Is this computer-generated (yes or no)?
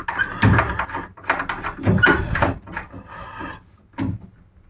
no